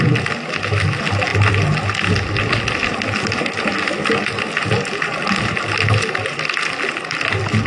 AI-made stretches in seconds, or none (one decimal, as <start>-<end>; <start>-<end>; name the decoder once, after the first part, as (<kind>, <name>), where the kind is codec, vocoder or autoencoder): none